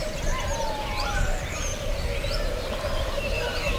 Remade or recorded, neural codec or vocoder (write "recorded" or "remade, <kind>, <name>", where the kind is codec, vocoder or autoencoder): remade, vocoder, BigVGAN v2